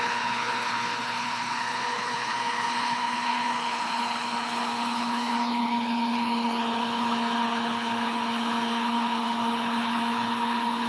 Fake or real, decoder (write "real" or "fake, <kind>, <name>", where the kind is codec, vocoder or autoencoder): fake, codec, HILCodec